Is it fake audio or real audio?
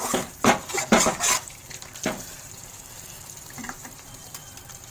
fake